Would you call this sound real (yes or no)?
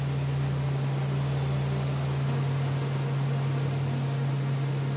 yes